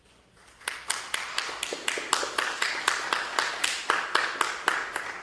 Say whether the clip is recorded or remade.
recorded